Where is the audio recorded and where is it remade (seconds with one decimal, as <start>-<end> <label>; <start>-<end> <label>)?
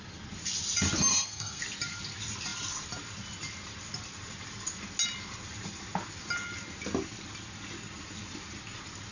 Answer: 0.0-1.1 recorded; 1.1-1.6 remade; 1.6-9.1 recorded